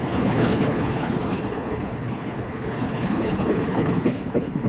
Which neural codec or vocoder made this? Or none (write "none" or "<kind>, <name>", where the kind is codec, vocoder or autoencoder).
codec, HILCodec